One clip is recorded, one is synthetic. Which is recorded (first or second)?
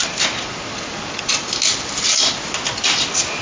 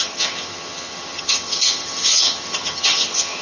first